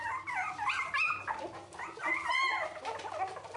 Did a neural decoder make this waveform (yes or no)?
no